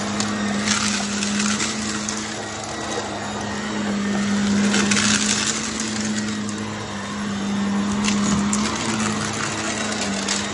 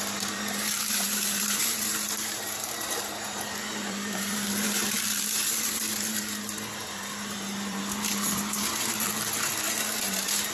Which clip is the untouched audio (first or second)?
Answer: first